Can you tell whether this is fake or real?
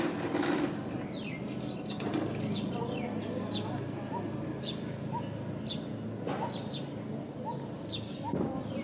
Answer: real